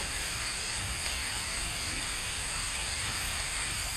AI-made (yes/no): yes